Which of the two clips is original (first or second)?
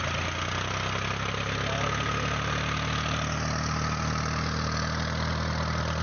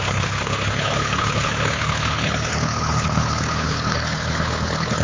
first